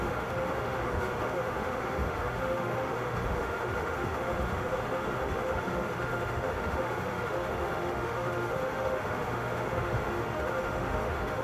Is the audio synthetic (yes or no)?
yes